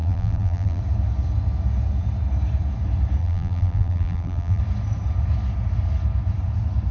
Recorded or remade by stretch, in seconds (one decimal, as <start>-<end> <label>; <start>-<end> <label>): 0.0-0.8 remade; 0.8-3.2 recorded; 3.2-4.6 remade; 4.6-6.9 recorded